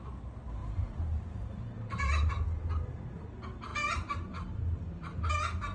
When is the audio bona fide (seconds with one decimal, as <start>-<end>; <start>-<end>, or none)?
0.0-0.6; 2.3-3.7; 5.3-5.7